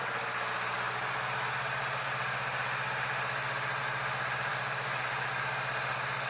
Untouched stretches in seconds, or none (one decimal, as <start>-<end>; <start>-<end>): 0.0-4.5; 5.1-6.3

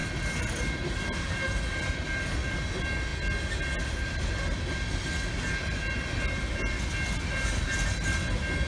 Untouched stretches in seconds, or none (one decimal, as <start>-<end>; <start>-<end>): 0.0-8.7

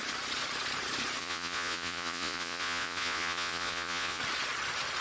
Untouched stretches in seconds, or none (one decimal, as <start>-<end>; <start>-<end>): 0.0-1.2; 4.2-5.0

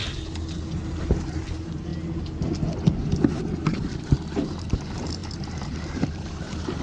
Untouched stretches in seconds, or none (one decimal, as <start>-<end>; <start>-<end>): 0.0-1.0; 1.9-4.5

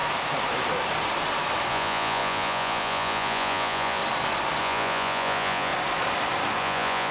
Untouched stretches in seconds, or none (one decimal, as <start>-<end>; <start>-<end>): 0.0-1.7; 4.0-4.6; 5.7-6.6